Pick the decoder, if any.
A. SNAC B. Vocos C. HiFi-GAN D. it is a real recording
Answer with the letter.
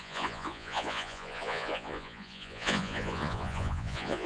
B